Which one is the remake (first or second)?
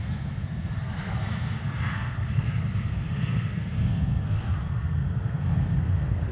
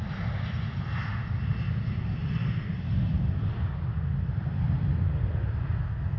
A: first